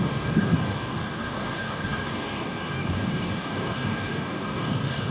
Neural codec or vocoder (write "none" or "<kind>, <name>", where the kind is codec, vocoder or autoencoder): codec, DAC